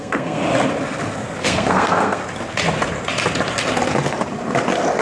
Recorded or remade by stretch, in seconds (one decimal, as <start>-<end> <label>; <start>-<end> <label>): 0.0-0.4 remade; 0.4-1.4 recorded; 1.4-2.2 remade; 2.2-5.0 recorded